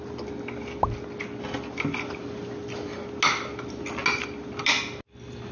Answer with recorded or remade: recorded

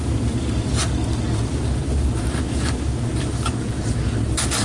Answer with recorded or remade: recorded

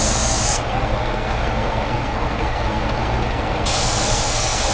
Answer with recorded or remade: remade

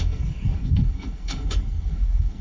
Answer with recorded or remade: remade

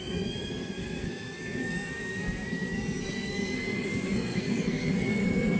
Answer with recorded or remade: remade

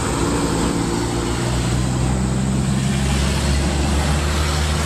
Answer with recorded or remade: recorded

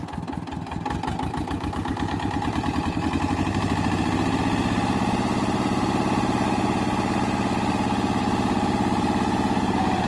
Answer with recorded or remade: recorded